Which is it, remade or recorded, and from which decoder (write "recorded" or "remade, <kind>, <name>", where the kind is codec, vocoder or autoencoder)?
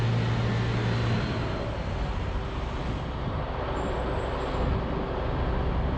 recorded